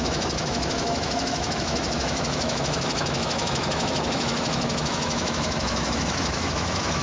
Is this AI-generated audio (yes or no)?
yes